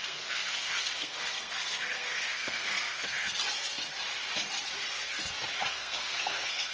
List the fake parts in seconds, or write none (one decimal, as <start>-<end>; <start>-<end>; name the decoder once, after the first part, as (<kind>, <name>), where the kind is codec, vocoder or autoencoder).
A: 0.0-3.4 (codec, SNAC); 5.7-6.7